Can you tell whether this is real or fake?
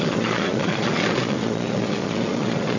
fake